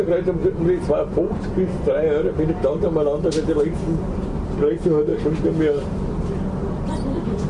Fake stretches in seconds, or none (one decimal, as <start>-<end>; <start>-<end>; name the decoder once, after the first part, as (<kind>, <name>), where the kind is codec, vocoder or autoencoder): none